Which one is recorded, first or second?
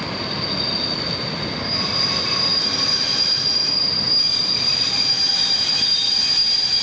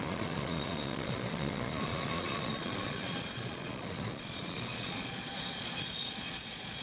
first